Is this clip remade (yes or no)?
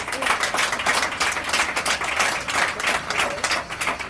no